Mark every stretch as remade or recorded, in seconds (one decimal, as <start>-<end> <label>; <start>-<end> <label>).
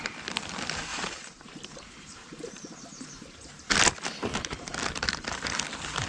0.0-0.9 recorded; 0.9-3.7 remade; 3.7-6.1 recorded